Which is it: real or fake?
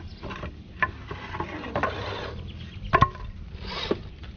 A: real